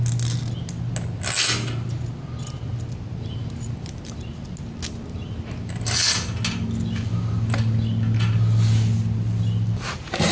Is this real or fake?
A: real